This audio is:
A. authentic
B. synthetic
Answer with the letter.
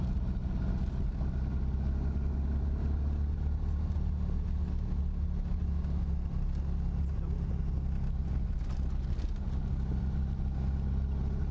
A